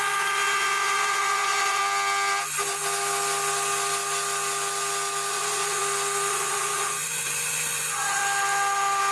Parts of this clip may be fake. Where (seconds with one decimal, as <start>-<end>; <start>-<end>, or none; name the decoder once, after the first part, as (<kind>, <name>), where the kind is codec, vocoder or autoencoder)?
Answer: 0.0-1.8 (vocoder, Vocos); 5.3-5.8; 6.3-8.2